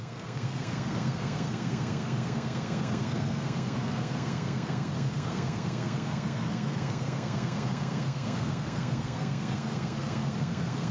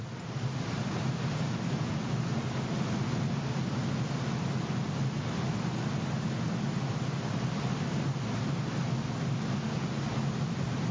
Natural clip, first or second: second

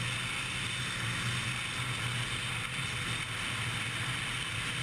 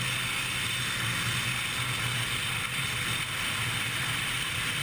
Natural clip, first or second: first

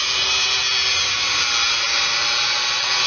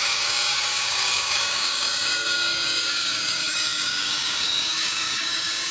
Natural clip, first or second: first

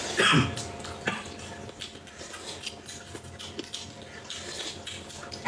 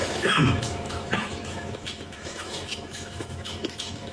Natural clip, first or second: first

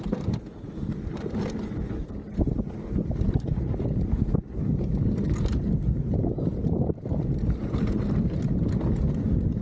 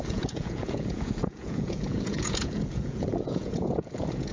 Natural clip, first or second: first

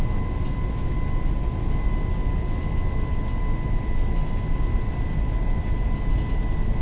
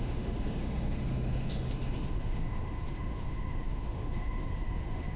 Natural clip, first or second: first